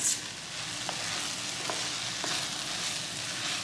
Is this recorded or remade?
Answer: recorded